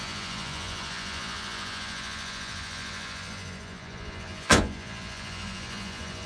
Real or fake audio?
fake